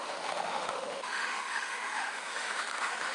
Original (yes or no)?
no